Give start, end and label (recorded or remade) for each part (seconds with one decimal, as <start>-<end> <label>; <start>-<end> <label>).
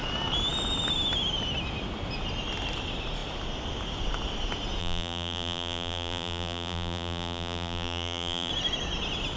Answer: 0.0-4.8 recorded; 4.8-8.5 remade; 8.5-9.4 recorded